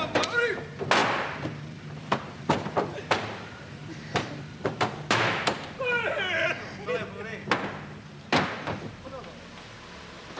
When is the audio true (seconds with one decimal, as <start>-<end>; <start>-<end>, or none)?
0.0-1.0; 6.0-10.4